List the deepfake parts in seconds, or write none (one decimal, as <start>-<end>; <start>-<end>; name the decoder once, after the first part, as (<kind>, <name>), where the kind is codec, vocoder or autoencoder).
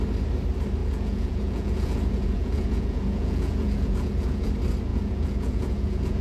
0.8-4.5 (vocoder, Vocos); 4.9-6.2